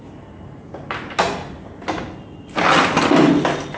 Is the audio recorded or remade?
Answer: recorded